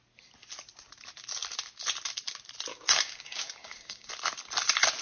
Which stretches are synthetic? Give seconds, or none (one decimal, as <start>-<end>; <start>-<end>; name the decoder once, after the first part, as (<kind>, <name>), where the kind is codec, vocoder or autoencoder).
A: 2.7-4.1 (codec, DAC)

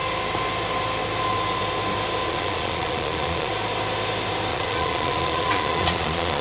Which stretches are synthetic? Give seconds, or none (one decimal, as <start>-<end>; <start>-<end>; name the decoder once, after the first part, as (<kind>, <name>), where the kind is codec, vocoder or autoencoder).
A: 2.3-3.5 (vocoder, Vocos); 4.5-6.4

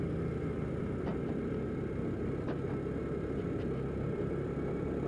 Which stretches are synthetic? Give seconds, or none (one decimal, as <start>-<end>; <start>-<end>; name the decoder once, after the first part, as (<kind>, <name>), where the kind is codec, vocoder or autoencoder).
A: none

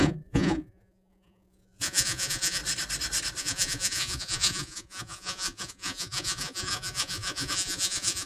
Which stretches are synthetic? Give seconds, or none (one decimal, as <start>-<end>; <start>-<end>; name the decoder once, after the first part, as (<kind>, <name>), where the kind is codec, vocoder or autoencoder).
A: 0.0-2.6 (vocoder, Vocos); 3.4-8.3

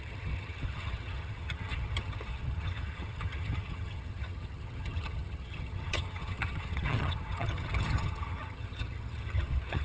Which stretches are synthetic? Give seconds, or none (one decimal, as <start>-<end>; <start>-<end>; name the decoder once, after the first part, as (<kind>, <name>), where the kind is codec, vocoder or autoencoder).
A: 0.0-9.8 (vocoder, HiFi-GAN)

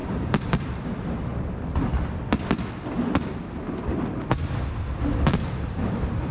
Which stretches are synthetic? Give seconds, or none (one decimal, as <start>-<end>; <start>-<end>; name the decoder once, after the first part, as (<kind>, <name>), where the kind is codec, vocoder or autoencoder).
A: 0.0-0.8 (vocoder, BigVGAN v2); 5.3-6.3

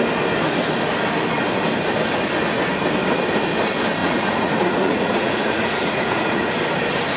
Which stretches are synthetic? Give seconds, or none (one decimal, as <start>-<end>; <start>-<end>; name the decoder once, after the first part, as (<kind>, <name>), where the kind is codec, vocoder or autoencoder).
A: 4.0-6.5 (vocoder, Vocos)

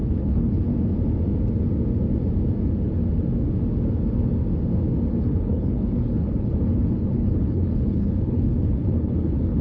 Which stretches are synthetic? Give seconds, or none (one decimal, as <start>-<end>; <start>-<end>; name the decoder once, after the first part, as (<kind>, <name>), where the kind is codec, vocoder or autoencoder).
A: 0.0-0.7 (codec, HILCodec); 5.1-9.6